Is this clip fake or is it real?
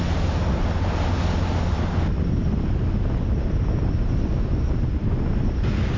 real